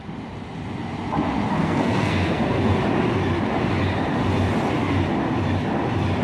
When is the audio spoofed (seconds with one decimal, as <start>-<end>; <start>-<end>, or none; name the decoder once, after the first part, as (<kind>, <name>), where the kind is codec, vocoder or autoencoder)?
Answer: 1.5-2.8 (codec, SNAC)